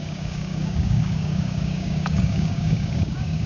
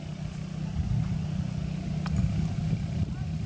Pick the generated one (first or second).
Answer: first